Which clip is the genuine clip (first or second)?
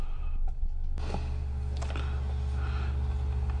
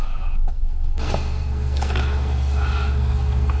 first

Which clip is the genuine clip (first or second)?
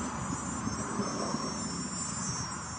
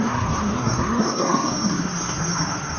first